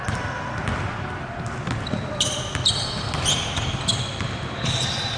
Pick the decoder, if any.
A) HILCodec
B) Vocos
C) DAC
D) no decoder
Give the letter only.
D